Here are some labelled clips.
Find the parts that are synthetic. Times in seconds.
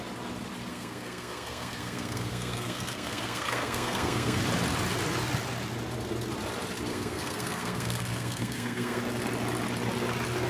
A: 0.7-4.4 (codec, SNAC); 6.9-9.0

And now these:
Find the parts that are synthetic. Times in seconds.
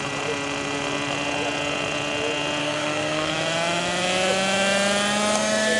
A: 2.6-3.3 (codec, SNAC)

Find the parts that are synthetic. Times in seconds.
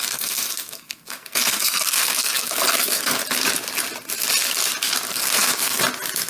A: 0.0-3.2 (codec, SNAC); 5.1-5.8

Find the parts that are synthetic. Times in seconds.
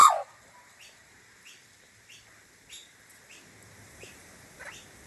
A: 0.0-1.1 (vocoder, BigVGAN v2)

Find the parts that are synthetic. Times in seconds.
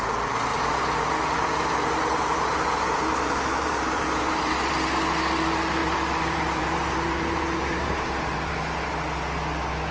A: 0.5-4.7 (vocoder, BigVGAN v2); 5.8-8.5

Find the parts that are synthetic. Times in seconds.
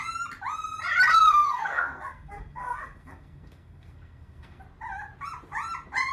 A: 1.1-4.6 (codec, SNAC)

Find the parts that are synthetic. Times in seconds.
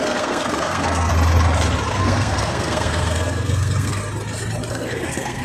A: 0.0-1.1 (codec, SNAC); 1.9-4.0; 4.7-5.4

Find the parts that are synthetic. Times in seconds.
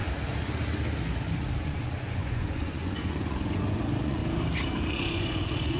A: 1.6-4.2 (vocoder, Vocos); 4.9-5.8